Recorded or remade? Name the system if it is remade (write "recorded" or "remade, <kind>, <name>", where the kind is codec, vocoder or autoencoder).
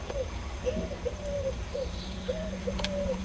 remade, vocoder, BigVGAN v2